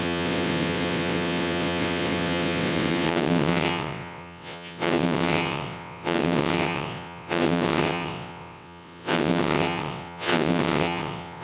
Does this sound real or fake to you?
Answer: fake